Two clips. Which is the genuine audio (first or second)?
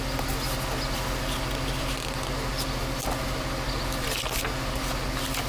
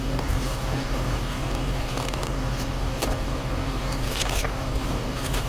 first